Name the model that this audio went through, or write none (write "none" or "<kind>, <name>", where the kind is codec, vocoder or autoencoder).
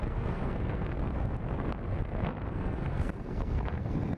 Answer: codec, SNAC